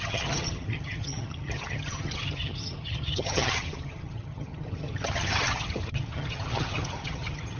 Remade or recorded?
remade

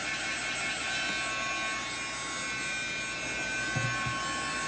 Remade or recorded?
recorded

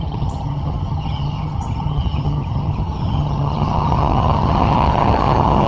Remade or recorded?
remade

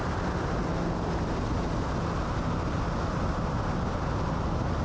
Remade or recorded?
recorded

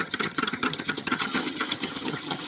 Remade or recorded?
remade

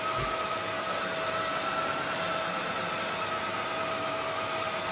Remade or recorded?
recorded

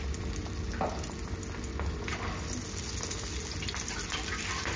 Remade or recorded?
recorded